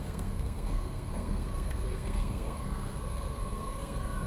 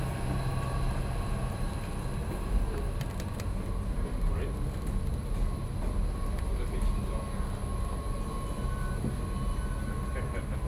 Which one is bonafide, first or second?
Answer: second